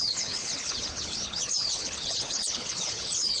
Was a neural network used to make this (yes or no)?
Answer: yes